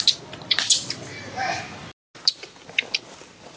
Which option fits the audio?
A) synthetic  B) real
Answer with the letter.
B